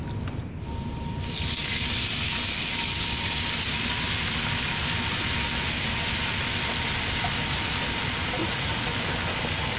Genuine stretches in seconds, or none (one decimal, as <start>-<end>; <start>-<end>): 0.0-8.4; 8.9-9.8